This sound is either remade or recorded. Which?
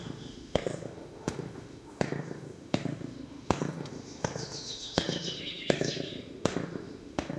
remade